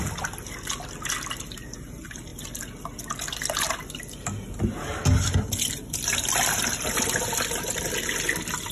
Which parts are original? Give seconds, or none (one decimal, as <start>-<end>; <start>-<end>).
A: 0.0-8.7